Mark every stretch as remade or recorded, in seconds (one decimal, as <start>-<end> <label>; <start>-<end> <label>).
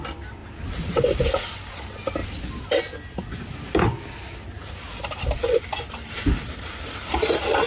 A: 0.0-7.7 recorded